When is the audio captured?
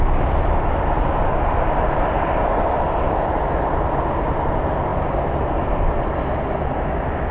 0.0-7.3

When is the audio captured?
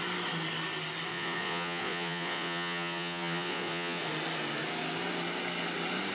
0.0-1.1; 4.0-6.1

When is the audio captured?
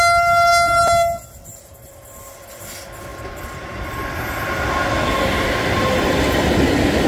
0.0-7.1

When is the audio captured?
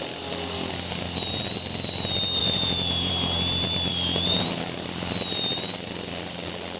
0.0-2.4; 3.1-3.9; 4.5-6.8